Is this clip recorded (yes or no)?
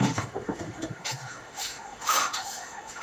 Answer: no